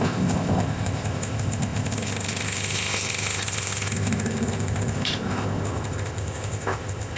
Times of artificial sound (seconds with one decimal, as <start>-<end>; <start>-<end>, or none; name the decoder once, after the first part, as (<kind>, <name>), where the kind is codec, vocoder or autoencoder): 0.0-7.2 (codec, ZipCodec)